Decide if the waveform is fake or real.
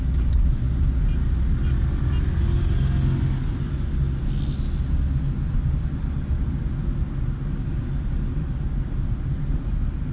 real